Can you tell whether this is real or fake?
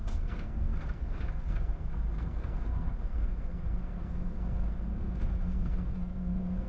fake